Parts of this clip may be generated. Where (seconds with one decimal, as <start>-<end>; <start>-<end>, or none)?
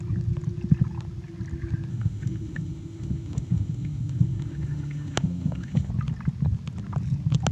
1.9-5.9